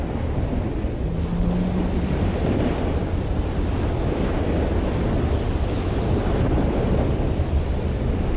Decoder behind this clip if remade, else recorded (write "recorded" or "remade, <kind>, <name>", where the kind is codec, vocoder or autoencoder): recorded